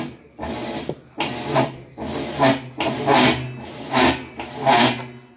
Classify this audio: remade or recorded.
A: recorded